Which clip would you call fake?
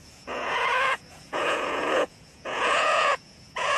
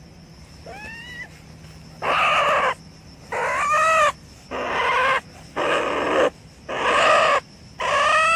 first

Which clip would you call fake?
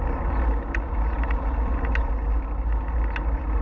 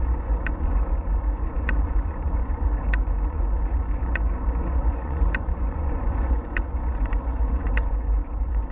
second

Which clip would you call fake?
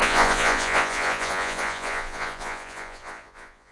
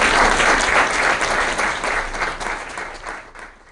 first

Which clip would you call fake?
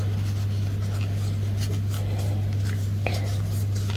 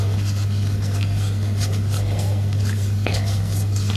second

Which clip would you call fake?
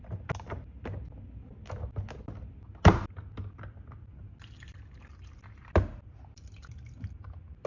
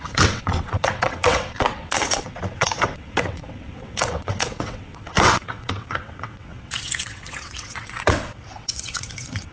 second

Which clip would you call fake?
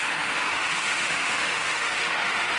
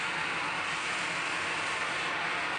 first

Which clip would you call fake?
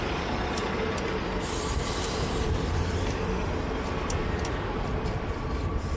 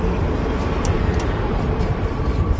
second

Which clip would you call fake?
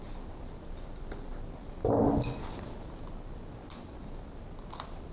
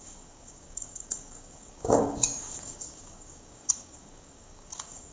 second